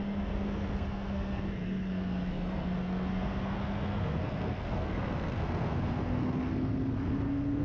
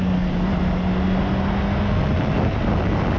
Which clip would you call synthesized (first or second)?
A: first